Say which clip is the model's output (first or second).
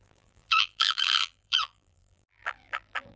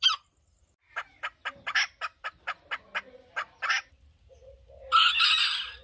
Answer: first